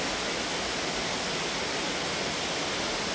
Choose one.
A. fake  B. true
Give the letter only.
B